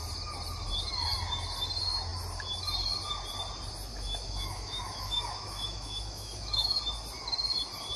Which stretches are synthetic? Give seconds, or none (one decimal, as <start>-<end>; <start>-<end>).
3.9-6.8

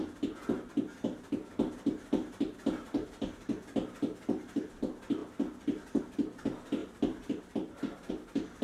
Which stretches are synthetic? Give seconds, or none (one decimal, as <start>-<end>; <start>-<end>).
6.8-8.1

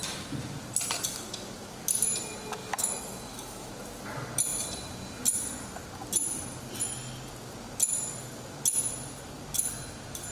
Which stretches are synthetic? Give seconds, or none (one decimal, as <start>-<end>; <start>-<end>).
2.6-3.7

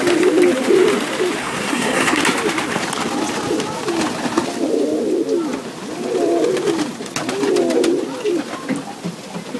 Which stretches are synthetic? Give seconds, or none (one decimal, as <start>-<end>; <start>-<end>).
1.4-2.2

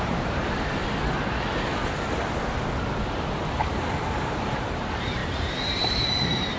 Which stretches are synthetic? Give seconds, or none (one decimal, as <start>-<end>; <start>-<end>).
0.0-0.8; 3.3-6.6

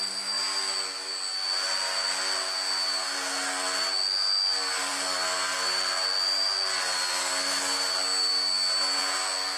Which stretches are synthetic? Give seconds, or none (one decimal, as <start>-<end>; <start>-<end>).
none

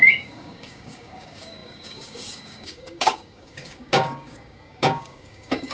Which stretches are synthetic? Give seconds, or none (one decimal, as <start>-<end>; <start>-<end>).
0.0-5.7